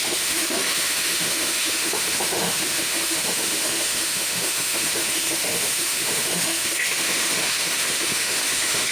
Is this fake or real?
fake